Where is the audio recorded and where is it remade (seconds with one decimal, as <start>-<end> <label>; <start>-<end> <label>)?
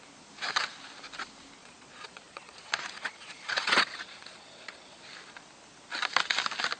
0.0-1.6 recorded; 1.6-5.0 remade; 5.0-6.8 recorded